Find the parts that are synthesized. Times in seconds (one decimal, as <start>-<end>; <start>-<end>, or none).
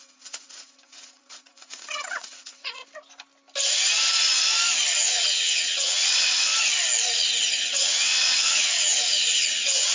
0.0-2.8; 4.9-6.5; 7.6-9.9